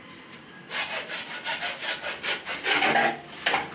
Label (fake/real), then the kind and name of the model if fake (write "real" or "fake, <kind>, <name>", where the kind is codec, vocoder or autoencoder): real